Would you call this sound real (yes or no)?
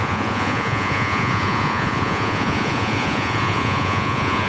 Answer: no